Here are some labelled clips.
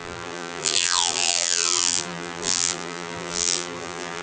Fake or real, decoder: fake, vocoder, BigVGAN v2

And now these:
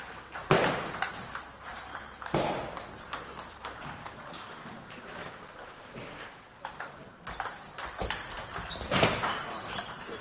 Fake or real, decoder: fake, vocoder, BigVGAN v2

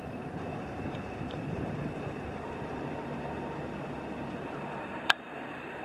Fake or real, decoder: fake, vocoder, BigVGAN v2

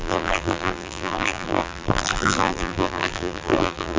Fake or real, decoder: fake, vocoder, BigVGAN v2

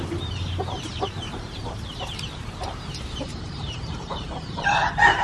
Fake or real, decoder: fake, vocoder, BigVGAN v2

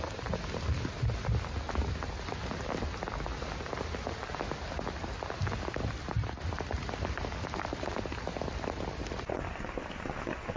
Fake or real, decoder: real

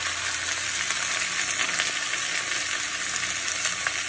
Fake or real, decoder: real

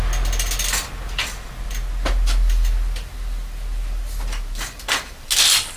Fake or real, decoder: real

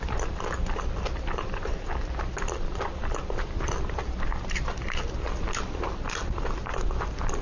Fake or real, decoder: fake, vocoder, BigVGAN v2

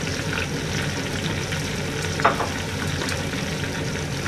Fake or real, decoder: real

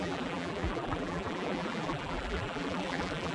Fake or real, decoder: fake, vocoder, BigVGAN v2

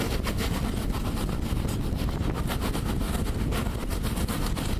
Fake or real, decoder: real